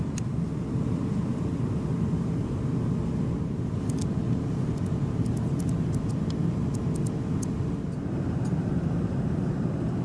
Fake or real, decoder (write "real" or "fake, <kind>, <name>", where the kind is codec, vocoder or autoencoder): real